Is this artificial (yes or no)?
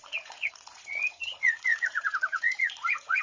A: yes